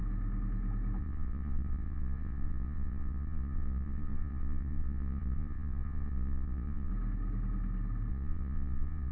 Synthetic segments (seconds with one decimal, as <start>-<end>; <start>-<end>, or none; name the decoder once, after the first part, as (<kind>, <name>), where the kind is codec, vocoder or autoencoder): 1.0-6.9 (vocoder, Vocos); 8.1-9.1